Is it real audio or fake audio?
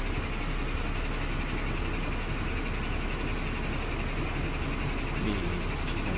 real